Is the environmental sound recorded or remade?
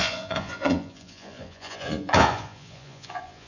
remade